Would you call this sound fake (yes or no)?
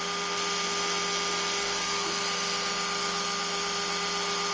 no